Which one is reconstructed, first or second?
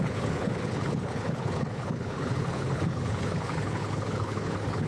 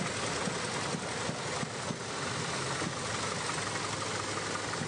first